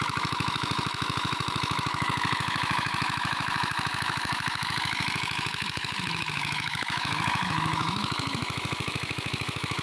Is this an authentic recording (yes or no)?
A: no